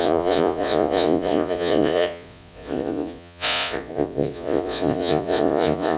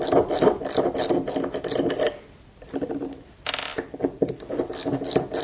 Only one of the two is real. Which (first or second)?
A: second